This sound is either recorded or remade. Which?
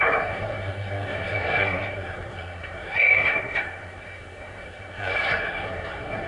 remade